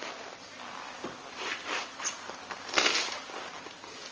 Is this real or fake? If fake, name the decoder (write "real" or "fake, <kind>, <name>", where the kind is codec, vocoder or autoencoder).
real